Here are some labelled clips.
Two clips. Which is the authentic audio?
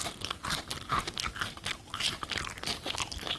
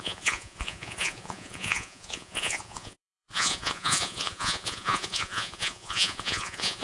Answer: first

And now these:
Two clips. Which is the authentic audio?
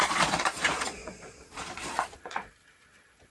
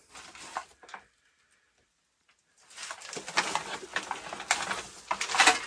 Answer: second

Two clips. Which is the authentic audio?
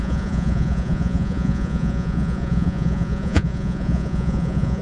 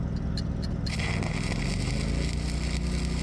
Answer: second